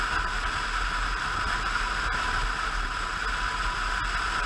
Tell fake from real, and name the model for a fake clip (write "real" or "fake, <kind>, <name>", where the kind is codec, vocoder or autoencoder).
real